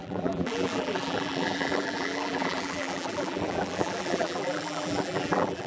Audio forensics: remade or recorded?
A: remade